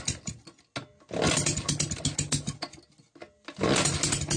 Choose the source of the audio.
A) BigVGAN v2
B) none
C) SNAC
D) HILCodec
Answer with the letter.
B